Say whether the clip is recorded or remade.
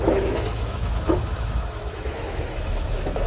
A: remade